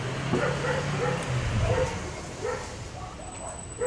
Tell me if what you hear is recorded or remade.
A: recorded